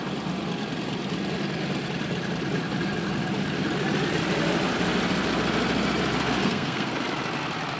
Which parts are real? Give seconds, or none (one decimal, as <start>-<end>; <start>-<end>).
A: 0.0-6.4; 6.9-7.8